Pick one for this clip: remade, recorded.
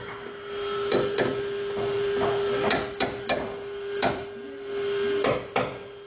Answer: remade